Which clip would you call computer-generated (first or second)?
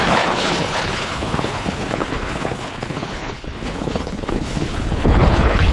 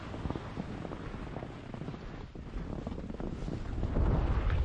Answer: first